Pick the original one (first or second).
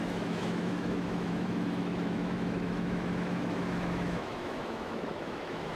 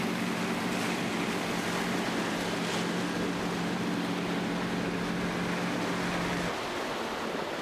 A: second